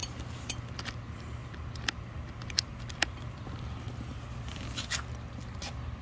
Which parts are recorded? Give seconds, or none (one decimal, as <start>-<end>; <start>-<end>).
0.0-6.0